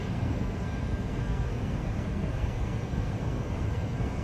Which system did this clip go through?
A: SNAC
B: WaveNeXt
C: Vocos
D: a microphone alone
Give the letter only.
A